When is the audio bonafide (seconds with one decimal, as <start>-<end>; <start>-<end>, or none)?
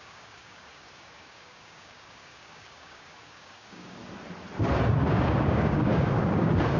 4.0-5.1